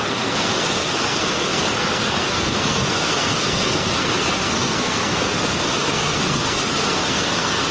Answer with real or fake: fake